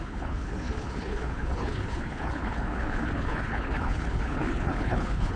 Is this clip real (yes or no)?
no